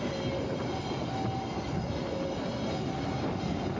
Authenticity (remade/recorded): recorded